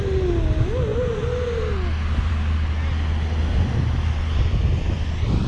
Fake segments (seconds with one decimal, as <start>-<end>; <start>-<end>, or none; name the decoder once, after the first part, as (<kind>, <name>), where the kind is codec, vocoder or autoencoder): none